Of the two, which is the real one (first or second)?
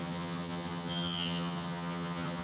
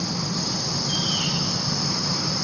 second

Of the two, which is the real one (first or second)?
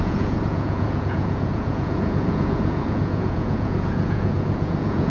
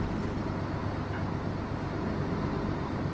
second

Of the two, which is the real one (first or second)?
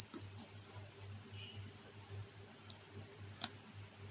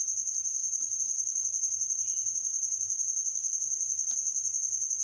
first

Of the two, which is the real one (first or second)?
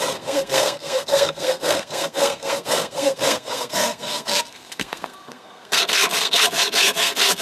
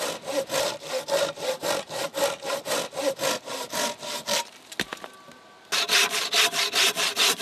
second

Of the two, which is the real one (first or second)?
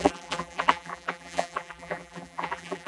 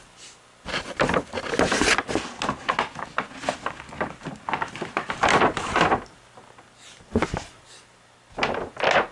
second